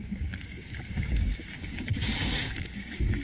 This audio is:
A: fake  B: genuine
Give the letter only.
A